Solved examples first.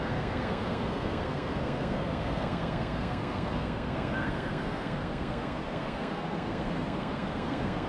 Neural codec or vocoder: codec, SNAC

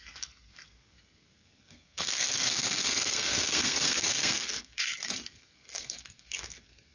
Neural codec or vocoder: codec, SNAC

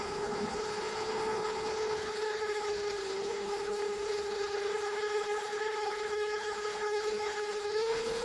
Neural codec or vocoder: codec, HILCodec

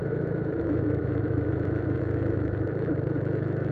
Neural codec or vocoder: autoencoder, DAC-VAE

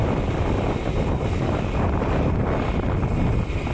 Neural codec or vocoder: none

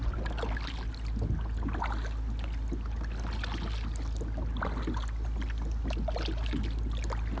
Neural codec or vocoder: none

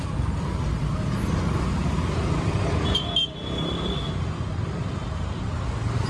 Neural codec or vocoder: none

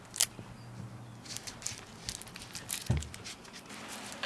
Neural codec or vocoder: none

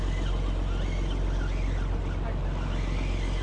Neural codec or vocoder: none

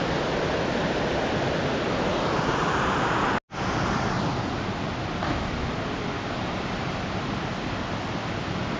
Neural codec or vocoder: none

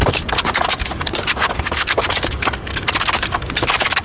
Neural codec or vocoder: codec, DAC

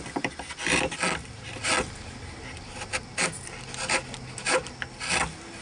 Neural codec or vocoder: none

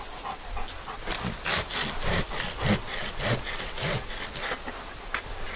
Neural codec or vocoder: none